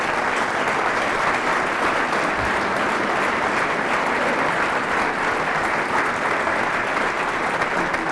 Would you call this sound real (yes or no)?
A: yes